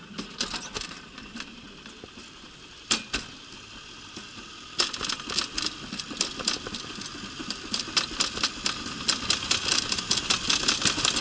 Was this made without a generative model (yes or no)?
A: yes